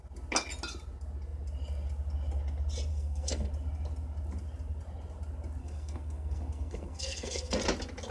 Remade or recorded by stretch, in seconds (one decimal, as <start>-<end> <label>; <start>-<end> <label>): 0.0-2.9 recorded; 2.9-3.5 remade; 3.5-5.6 recorded; 5.6-7.6 remade; 7.6-8.1 recorded